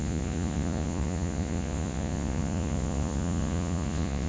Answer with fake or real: fake